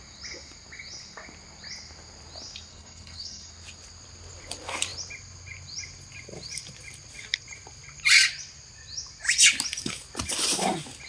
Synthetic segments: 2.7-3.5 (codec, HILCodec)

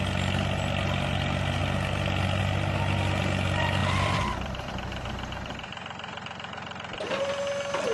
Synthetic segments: 3.8-4.7 (vocoder, BigVGAN v2)

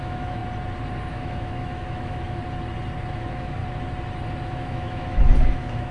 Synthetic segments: 0.0-0.4 (autoencoder, DAC-VAE); 1.1-2.4; 3.1-3.6; 4.5-5.9